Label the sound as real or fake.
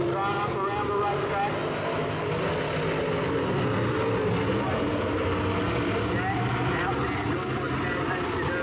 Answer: real